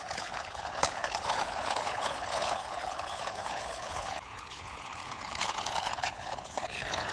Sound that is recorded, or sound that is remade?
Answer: remade